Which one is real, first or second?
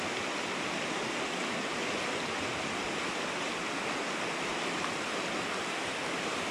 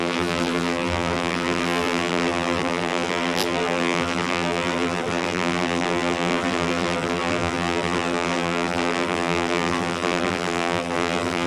first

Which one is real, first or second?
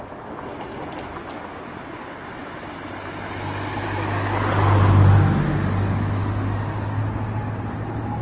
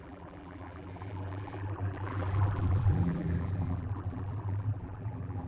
first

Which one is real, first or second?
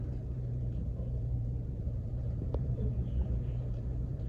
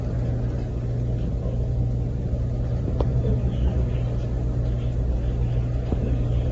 second